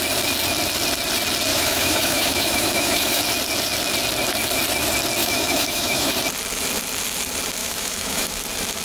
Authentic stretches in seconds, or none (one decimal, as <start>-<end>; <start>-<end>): 0.0-1.5; 3.2-5.2; 6.1-7.6; 8.4-8.8